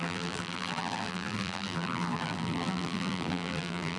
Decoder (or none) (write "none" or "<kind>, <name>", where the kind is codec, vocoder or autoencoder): vocoder, BigVGAN v2